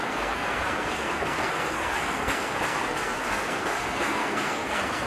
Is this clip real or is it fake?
fake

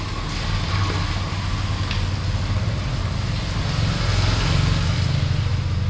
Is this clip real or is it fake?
real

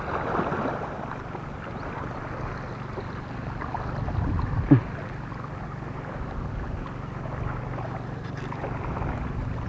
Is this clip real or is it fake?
real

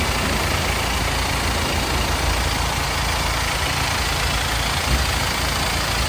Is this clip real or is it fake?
real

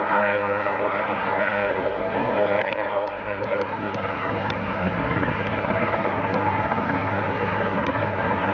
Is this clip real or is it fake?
fake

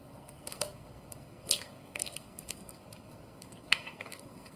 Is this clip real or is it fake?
fake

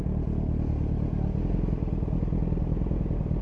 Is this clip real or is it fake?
real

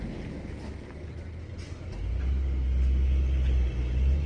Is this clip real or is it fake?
real